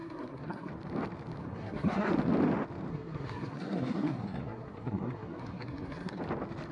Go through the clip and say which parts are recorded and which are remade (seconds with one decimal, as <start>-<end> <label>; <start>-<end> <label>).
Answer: 0.0-0.7 remade; 0.7-1.4 recorded; 1.4-2.1 remade; 2.1-2.9 recorded; 2.9-6.2 remade; 6.2-6.7 recorded